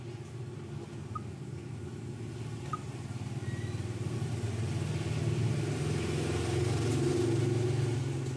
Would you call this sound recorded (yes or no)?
yes